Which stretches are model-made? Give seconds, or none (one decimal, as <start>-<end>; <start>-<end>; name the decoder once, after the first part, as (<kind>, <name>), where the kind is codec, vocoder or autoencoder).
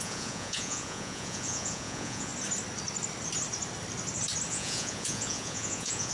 0.0-2.3 (vocoder, Vocos); 4.5-6.1